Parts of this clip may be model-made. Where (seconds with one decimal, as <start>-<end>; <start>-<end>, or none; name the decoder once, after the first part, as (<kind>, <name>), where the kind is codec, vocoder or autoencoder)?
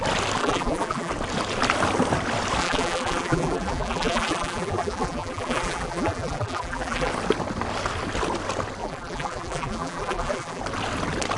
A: 0.4-1.1 (vocoder, BigVGAN v2); 2.6-7.1; 8.8-10.6